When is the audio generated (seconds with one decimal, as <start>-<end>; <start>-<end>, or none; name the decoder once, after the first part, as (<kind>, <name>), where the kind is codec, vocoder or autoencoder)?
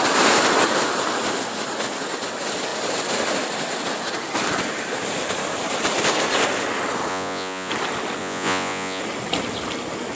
7.1-7.7 (vocoder, Vocos); 8.2-9.0